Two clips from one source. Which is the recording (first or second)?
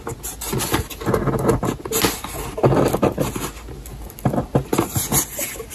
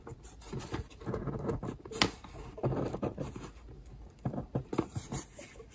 first